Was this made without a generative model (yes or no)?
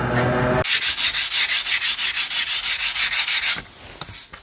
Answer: yes